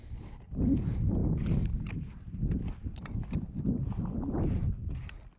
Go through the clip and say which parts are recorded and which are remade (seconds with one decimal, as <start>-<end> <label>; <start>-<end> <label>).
0.0-5.4 recorded

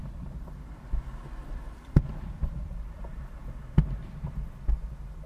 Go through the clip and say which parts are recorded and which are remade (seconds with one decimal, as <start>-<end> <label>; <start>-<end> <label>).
0.0-3.2 remade; 3.2-5.3 recorded

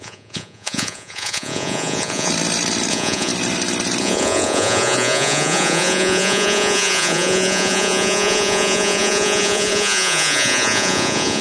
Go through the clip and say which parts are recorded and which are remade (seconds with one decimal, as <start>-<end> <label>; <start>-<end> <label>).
0.0-2.3 remade; 2.3-2.9 recorded; 2.9-3.3 remade; 3.3-4.0 recorded; 4.0-11.4 remade